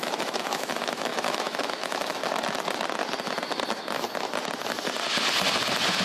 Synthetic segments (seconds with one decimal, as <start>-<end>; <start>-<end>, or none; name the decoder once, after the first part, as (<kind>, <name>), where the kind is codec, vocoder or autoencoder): 0.0-2.2 (autoencoder, DAC-VAE)